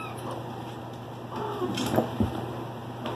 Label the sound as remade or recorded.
recorded